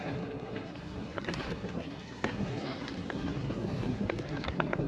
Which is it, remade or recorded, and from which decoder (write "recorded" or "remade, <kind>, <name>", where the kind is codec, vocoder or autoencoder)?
remade, codec, SNAC